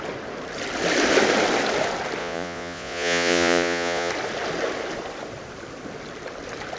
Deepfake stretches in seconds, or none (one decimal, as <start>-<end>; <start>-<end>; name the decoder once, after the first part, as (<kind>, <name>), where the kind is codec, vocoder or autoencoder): 2.2-4.1 (vocoder, Vocos)